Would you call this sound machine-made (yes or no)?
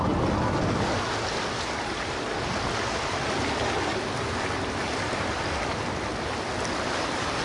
no